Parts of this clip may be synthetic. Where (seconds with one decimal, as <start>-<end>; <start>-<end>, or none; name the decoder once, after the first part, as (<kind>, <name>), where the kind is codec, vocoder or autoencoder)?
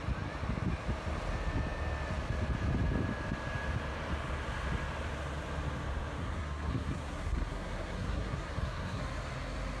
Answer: 6.2-9.0 (codec, SNAC)